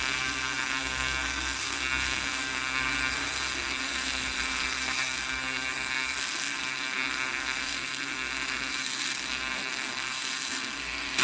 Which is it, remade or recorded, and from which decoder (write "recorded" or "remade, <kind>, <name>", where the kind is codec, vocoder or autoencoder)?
remade, codec, SNAC